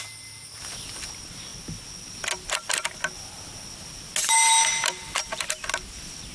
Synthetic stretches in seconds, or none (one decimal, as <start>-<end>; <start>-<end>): none

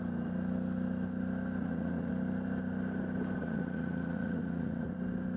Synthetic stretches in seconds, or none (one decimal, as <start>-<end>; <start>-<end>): 1.6-2.1; 3.4-4.9

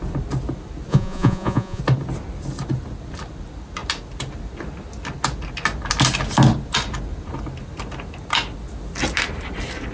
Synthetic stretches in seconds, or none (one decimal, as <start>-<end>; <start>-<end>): 0.9-1.8